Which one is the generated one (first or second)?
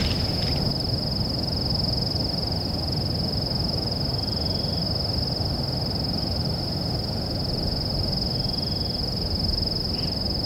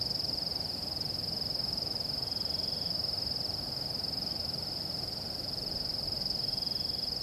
second